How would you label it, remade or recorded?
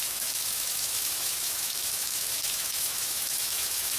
remade